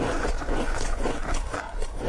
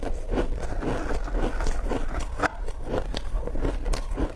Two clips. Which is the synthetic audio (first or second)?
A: first